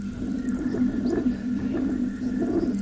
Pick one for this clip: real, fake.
real